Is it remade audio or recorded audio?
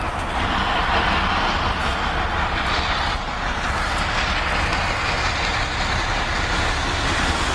recorded